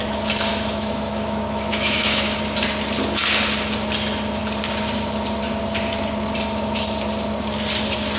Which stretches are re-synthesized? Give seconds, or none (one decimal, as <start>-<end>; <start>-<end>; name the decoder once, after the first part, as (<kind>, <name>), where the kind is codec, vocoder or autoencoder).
0.5-2.4 (autoencoder, DAC-VAE)